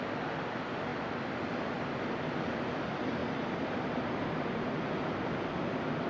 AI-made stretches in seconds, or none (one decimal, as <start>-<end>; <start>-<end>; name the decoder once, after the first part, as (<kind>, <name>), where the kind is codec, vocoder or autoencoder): 0.0-0.9 (vocoder, BigVGAN v2); 1.7-6.1